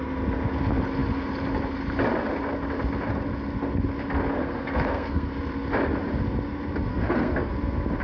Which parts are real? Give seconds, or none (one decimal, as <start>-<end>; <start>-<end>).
0.0-4.4; 5.3-6.9; 7.5-8.0